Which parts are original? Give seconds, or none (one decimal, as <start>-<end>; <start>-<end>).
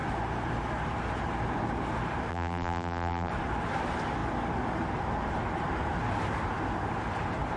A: 0.0-2.3; 3.3-7.6